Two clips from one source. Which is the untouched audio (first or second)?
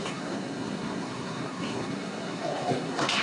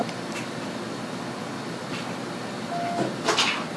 second